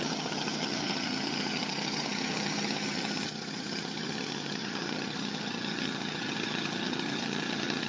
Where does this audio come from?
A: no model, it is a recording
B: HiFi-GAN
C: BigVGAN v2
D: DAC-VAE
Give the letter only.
B